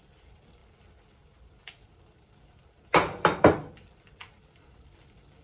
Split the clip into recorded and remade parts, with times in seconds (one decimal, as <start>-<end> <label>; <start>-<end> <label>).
0.0-0.6 remade; 0.6-3.7 recorded; 3.7-5.4 remade